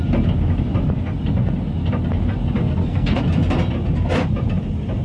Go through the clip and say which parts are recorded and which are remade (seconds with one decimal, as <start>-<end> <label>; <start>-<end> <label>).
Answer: 0.0-2.6 recorded; 2.6-3.2 remade; 3.2-5.0 recorded